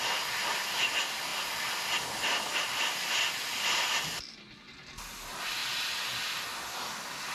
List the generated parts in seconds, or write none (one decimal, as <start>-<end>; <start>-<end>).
none